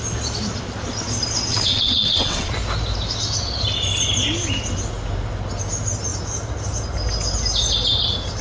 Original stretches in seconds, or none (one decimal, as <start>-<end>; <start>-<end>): 0.0-1.5; 2.5-8.4